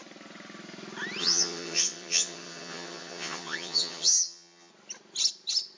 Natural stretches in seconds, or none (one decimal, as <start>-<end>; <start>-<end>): 0.0-1.2; 4.7-5.8